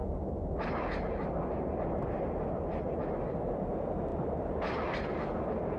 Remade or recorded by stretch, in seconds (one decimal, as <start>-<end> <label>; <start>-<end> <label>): 0.0-4.1 recorded; 4.1-5.2 remade; 5.2-5.8 recorded